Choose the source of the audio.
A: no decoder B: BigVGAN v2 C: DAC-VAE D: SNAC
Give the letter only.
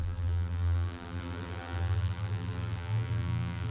B